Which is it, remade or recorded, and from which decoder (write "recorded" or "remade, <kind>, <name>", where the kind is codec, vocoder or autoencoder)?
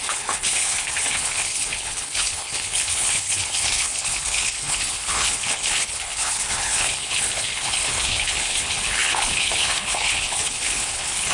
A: remade, codec, HILCodec